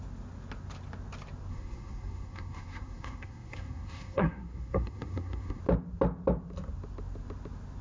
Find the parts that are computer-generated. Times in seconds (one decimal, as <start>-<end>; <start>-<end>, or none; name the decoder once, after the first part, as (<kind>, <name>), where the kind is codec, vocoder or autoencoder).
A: 1.5-5.6 (codec, SNAC)